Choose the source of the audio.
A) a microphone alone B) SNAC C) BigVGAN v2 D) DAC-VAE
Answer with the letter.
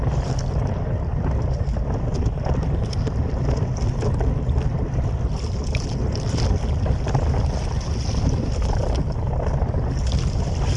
A